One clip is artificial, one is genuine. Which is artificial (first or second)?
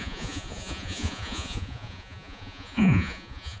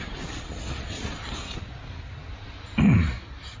first